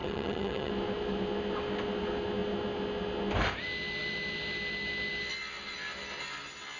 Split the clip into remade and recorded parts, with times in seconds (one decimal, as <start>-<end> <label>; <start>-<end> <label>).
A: 0.0-0.7 remade; 0.7-6.8 recorded